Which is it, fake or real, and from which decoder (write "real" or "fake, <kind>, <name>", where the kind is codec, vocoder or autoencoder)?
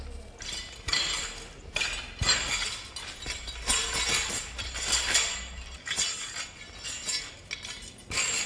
real